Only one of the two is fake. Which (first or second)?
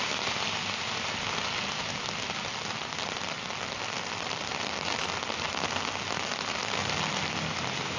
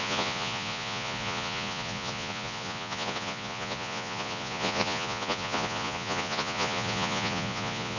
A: second